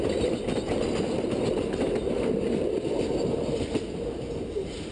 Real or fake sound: real